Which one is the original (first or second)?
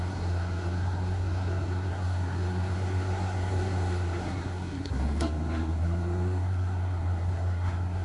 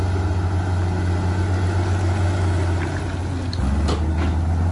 second